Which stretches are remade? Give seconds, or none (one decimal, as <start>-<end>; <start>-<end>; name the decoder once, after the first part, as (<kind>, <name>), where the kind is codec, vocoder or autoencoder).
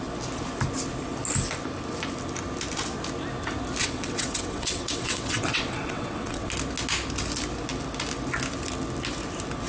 3.8-6.5 (vocoder, WaveNeXt)